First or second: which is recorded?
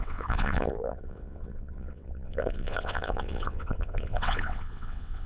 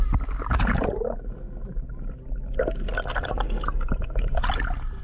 second